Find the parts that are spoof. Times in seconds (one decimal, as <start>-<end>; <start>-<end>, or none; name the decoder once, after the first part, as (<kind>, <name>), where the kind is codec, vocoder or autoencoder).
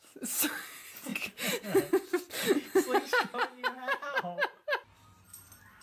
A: none